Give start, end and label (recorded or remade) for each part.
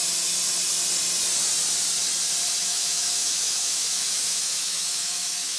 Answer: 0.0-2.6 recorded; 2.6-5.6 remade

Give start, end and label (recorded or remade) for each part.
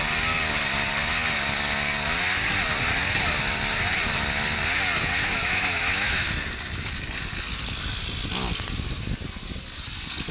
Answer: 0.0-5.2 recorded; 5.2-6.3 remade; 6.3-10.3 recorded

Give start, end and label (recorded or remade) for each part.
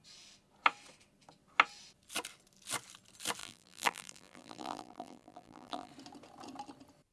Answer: 0.0-3.4 recorded; 3.4-5.9 remade; 5.9-7.1 recorded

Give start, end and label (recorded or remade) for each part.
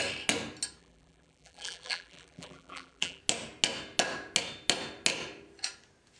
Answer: 0.0-0.8 recorded; 0.8-3.2 remade; 3.2-6.2 recorded